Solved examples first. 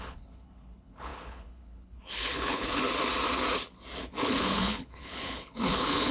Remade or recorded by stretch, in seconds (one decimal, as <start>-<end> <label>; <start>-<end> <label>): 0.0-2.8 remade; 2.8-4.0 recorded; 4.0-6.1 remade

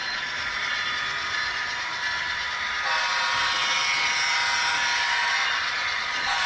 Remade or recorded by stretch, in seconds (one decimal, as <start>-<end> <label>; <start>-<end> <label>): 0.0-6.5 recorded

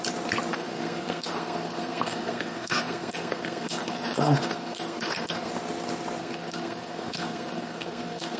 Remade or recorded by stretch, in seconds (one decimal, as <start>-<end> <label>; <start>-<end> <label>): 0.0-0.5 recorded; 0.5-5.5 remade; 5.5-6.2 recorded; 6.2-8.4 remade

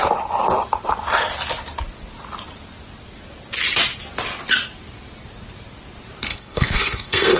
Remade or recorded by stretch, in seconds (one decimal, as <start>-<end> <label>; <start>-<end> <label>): 0.0-6.3 recorded; 6.3-7.4 remade

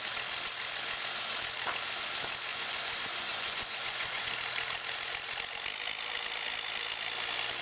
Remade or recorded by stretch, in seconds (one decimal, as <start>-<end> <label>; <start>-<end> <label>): 0.0-2.5 recorded; 2.5-4.3 remade; 4.3-7.6 recorded

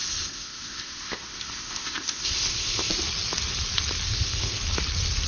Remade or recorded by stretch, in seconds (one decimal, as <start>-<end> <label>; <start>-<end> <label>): 0.0-2.9 remade; 2.9-4.1 recorded; 4.1-4.6 remade; 4.6-5.3 recorded